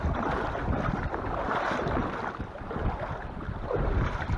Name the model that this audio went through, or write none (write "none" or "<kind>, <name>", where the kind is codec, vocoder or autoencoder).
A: none